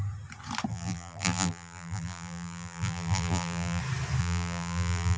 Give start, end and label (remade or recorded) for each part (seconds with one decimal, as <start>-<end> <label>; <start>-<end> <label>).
0.0-0.7 recorded; 0.7-3.8 remade; 3.8-4.2 recorded; 4.2-5.2 remade